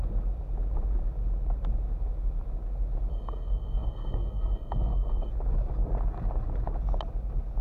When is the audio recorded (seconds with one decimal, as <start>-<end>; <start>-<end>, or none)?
0.0-3.1; 5.3-7.6